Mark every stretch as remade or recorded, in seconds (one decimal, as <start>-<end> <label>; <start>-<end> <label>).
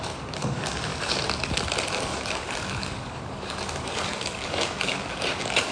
0.0-0.9 remade; 0.9-2.0 recorded; 2.0-5.7 remade